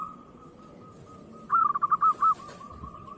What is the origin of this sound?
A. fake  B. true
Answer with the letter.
B